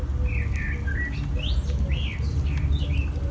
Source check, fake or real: real